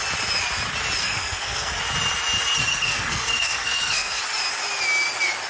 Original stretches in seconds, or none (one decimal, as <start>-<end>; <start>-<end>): 0.0-1.0; 1.8-2.7; 4.2-5.5